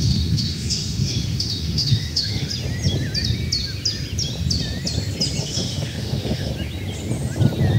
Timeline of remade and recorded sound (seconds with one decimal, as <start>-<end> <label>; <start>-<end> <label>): 0.0-2.5 remade; 2.5-5.4 recorded; 5.4-6.5 remade; 6.5-7.8 recorded